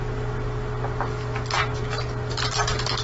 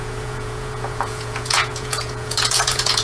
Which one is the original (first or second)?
first